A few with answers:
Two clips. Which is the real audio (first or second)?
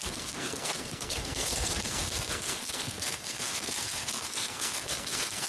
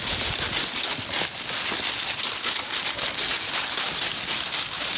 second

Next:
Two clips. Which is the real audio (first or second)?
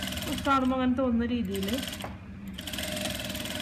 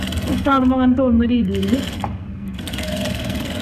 first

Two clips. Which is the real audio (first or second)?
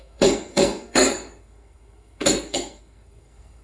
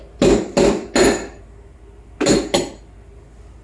second